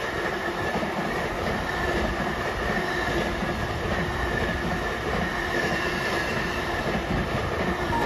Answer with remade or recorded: recorded